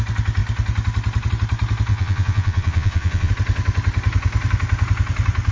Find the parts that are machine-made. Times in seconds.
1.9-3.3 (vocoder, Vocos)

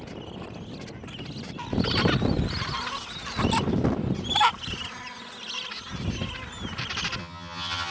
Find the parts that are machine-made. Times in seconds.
7.2-7.9 (vocoder, HiFi-GAN)

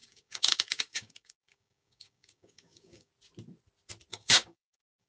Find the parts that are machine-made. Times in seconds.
0.0-3.1 (codec, DAC); 4.1-5.1

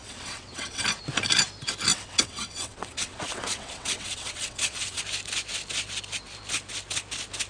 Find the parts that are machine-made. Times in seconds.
0.0-0.8 (vocoder, WaveNeXt); 1.9-5.0

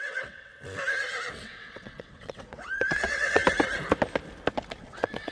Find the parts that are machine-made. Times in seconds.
0.0-0.5 (vocoder, WaveNeXt); 1.3-3.4; 4.8-5.3

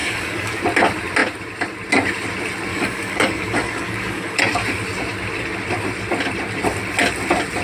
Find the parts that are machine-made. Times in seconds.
0.0-0.6 (codec, DAC); 2.7-4.4

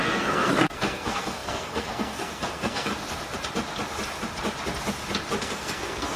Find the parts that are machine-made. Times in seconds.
0.0-2.9 (codec, SNAC); 5.4-6.2

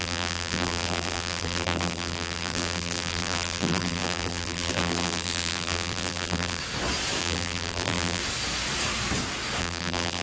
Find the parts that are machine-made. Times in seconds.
0.0-6.6 (vocoder, BigVGAN v2); 7.2-8.2; 9.6-10.2